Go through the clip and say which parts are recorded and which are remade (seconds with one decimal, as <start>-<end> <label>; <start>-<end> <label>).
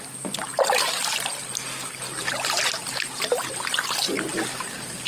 0.0-5.1 recorded